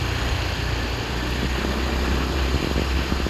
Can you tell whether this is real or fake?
real